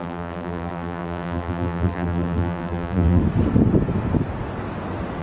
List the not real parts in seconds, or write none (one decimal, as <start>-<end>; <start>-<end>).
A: 0.0-3.2